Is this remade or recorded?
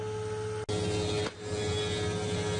recorded